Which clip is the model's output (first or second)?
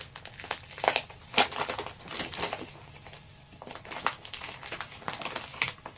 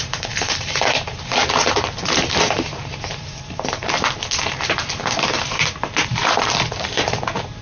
second